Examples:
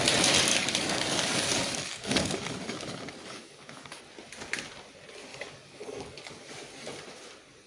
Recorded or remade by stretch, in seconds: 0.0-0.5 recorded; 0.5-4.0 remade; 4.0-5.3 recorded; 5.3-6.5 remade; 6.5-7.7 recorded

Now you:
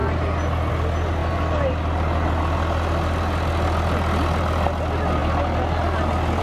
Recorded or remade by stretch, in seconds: 0.0-6.4 recorded

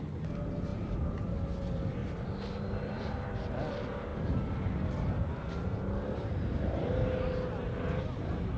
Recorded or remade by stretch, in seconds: 0.0-0.7 recorded; 0.7-1.3 remade; 1.3-2.0 recorded; 2.0-3.3 remade; 3.3-8.6 recorded

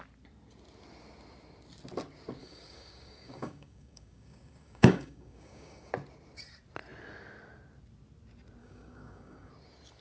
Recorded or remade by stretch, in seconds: 0.0-2.4 recorded; 2.4-5.9 remade; 5.9-8.6 recorded; 8.6-9.5 remade; 9.5-10.0 recorded

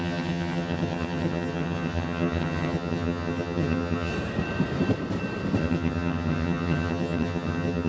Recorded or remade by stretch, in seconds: 0.0-4.1 remade; 4.1-5.6 recorded; 5.6-7.9 remade

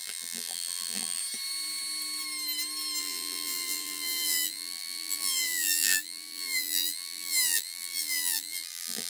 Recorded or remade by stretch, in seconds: 0.0-1.2 remade; 1.2-3.0 recorded; 3.0-9.1 remade

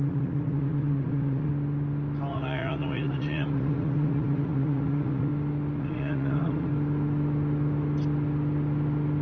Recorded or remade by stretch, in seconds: 0.0-1.5 remade; 1.5-2.3 recorded; 2.3-5.3 remade; 5.3-5.8 recorded; 5.8-6.7 remade; 6.7-9.2 recorded

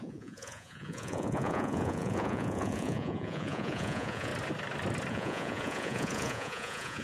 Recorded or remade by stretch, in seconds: 0.0-4.3 remade; 4.3-5.1 recorded; 5.1-7.0 remade